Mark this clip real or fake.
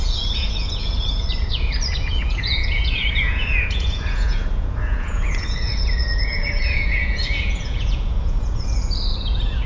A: fake